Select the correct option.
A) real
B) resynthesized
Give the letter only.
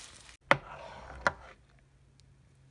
A